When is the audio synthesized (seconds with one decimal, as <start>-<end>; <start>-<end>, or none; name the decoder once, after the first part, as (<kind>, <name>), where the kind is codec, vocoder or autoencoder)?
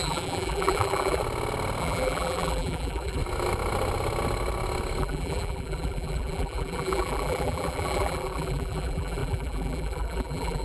0.0-1.2 (vocoder, BigVGAN v2); 1.8-3.2; 5.0-10.6